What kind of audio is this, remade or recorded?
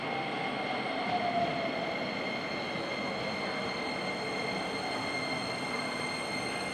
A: recorded